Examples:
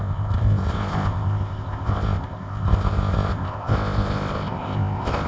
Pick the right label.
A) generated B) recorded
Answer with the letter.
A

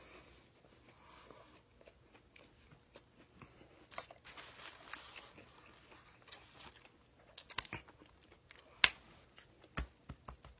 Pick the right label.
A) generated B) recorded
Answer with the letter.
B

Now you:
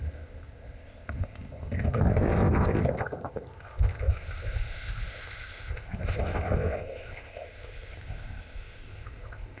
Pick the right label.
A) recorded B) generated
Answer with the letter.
B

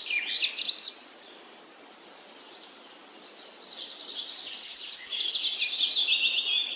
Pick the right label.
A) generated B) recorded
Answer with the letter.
B